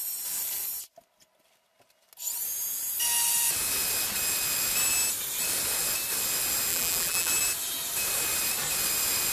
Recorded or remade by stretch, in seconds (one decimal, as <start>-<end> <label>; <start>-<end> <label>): 0.0-6.7 recorded; 6.7-7.3 remade; 7.3-9.3 recorded